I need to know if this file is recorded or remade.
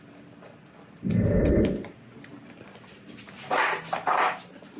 recorded